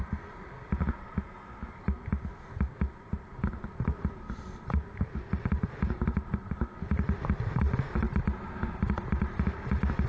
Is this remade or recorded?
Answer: recorded